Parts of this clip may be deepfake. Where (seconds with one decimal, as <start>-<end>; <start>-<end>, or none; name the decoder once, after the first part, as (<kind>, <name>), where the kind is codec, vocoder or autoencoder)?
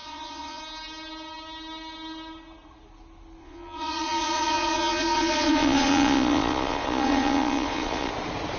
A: 0.0-0.6 (vocoder, Vocos); 3.4-8.1